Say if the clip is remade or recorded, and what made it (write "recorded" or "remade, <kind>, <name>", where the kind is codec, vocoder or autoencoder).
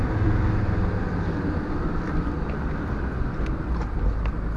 remade, vocoder, BigVGAN v2